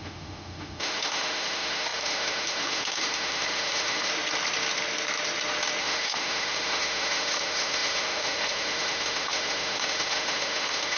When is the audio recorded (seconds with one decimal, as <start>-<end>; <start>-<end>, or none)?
4.1-5.8